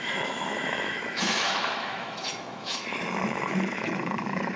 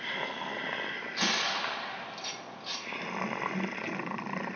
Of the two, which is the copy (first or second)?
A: first